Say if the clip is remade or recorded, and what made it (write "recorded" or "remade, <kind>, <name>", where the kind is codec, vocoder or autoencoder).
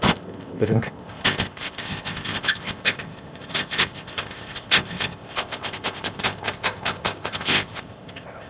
remade, codec, ZipCodec